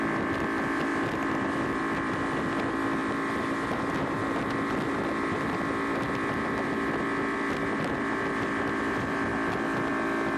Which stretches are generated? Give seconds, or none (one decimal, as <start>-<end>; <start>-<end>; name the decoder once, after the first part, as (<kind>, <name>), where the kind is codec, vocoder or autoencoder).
0.9-2.4 (vocoder, BigVGAN v2)